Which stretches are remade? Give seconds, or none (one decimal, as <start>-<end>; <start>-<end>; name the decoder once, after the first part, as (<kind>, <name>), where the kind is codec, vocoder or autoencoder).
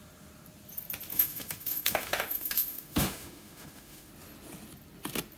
1.1-4.1 (autoencoder, DAC-VAE)